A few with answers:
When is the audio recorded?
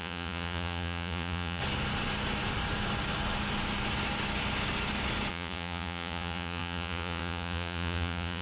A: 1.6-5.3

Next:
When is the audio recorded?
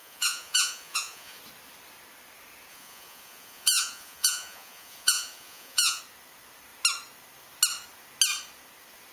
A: 1.4-2.7; 6.0-9.1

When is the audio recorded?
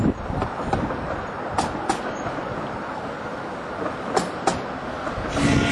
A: 0.0-5.7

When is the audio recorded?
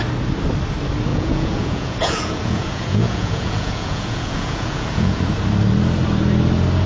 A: 0.0-1.1; 5.2-6.9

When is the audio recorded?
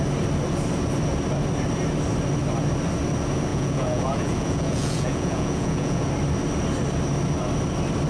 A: 0.0-3.5; 6.1-8.1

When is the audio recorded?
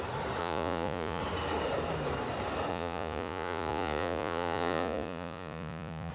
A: 0.0-0.4; 1.2-2.7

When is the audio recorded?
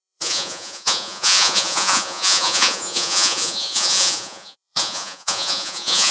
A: none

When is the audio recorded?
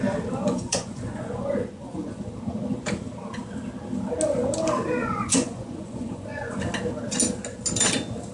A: 0.0-0.5; 2.2-5.0; 6.6-8.3